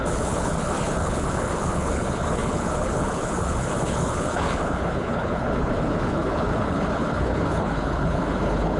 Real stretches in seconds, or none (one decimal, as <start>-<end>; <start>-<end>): none